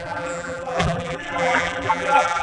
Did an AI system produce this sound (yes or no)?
yes